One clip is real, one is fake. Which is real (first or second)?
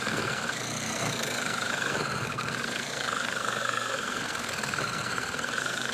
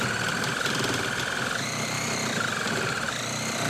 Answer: second